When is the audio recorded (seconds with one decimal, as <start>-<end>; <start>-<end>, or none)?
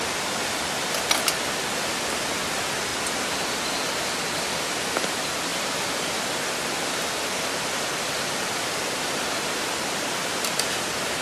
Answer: 0.0-11.2